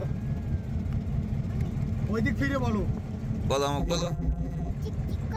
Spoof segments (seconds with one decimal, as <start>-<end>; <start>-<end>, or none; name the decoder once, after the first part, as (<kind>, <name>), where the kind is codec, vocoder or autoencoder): 3.8-4.7 (vocoder, BigVGAN v2)